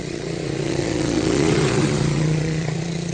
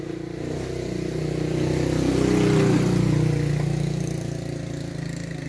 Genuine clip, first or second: second